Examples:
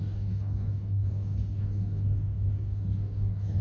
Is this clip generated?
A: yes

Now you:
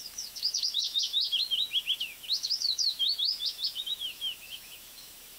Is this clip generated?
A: yes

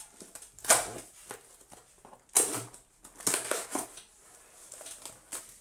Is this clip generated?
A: no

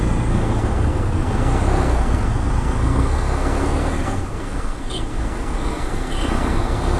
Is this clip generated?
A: yes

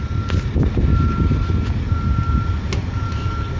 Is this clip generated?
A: no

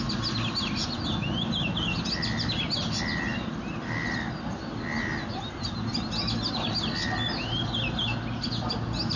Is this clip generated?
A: no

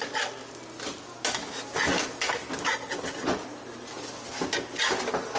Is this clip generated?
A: no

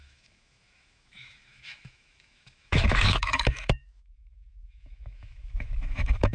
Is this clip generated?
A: yes